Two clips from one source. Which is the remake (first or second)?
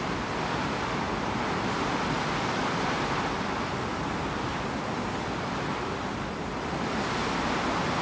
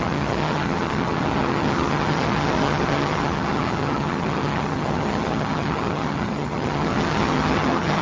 second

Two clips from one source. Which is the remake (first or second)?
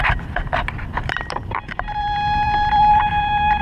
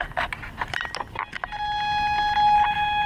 first